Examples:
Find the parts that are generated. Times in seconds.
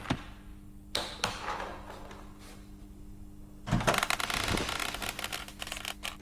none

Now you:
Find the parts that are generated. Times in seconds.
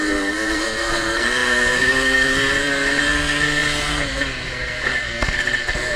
0.0-6.0 (codec, SNAC)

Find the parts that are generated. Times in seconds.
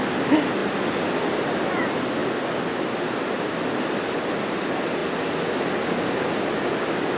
none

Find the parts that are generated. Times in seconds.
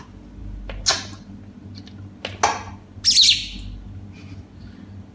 none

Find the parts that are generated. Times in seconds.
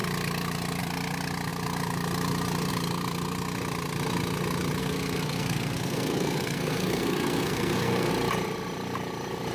4.8-8.1 (codec, SNAC)